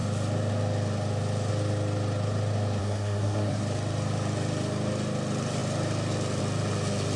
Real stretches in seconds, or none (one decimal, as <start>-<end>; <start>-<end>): 0.0-2.8; 3.6-7.2